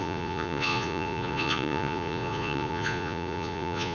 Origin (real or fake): fake